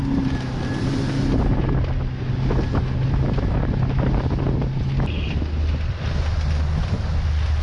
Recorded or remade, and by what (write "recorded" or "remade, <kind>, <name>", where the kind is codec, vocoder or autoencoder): recorded